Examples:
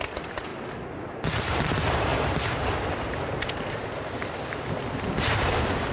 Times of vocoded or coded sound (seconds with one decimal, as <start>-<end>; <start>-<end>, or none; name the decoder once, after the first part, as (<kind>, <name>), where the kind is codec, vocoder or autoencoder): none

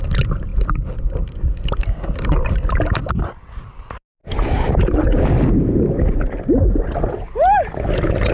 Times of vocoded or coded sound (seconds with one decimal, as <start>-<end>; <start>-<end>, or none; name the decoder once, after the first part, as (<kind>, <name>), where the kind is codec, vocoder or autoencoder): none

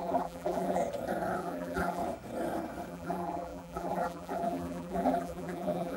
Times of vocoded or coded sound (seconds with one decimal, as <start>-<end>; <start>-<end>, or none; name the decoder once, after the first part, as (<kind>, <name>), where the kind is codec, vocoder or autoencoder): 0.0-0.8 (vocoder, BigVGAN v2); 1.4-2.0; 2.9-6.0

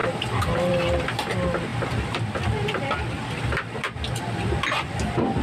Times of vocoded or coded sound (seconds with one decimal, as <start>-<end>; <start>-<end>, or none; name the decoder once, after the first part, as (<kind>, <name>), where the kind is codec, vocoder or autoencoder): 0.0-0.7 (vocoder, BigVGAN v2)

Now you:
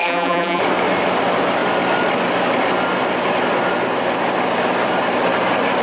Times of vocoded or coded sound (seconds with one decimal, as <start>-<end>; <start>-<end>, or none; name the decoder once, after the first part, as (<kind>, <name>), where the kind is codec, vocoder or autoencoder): 0.0-0.6 (vocoder, BigVGAN v2)

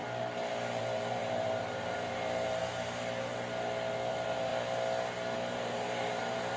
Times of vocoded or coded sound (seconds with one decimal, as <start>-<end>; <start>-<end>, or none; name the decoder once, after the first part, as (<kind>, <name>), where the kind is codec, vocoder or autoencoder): 0.8-2.6 (vocoder, BigVGAN v2); 4.1-4.5; 5.5-6.6

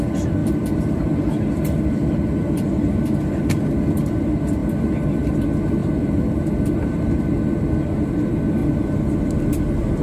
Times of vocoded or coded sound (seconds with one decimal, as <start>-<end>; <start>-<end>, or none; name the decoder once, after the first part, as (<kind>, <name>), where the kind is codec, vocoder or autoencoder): 0.4-2.3 (vocoder, BigVGAN v2); 5.8-8.2